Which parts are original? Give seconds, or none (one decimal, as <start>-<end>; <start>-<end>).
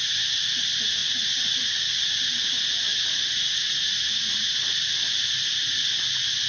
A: 0.0-1.0; 2.1-2.9; 5.1-6.5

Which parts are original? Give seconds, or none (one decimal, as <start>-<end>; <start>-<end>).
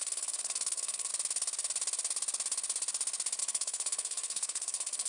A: 1.1-3.4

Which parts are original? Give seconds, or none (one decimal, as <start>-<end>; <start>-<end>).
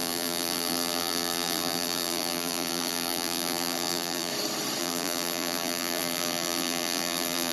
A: 4.3-4.8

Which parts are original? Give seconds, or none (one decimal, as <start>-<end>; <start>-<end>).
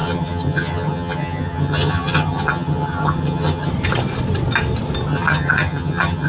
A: 3.7-5.1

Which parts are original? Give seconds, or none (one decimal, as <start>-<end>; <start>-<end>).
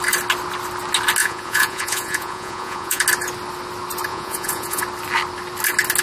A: 0.0-1.2; 3.0-4.1; 4.8-6.0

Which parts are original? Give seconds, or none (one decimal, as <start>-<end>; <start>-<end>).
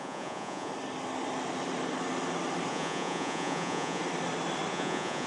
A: 0.7-2.7; 4.0-4.7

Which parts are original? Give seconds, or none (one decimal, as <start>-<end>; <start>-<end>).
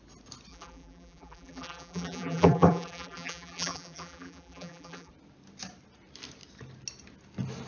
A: 0.0-0.5; 5.1-7.7